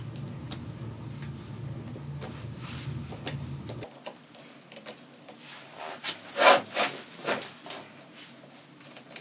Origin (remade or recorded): recorded